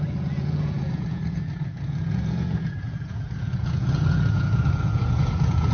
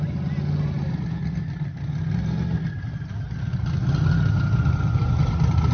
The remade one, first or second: first